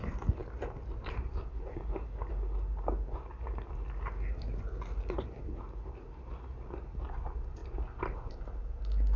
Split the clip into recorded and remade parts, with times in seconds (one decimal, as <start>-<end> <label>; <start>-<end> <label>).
0.0-9.2 recorded